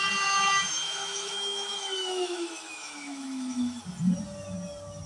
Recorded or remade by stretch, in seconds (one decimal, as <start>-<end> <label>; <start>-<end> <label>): 0.0-0.7 recorded; 0.7-3.8 remade; 3.8-5.1 recorded